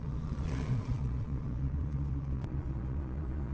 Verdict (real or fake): fake